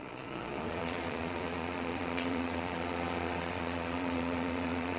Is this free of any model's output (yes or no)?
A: no